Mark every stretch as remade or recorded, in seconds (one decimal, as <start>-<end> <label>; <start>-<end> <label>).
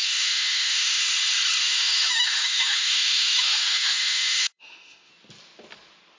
0.0-1.0 remade; 1.0-1.6 recorded; 1.6-5.1 remade; 5.1-6.2 recorded